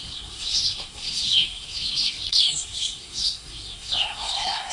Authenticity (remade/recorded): remade